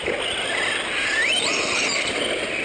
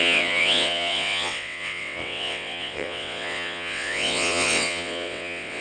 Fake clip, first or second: second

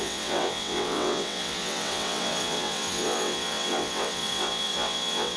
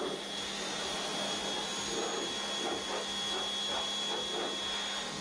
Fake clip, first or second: first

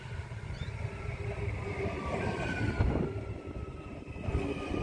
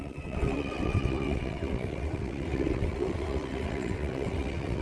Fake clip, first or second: second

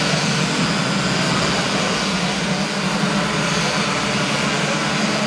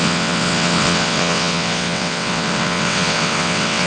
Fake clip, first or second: second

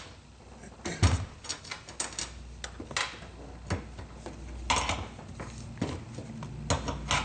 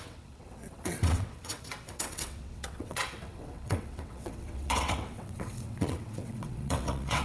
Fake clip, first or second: second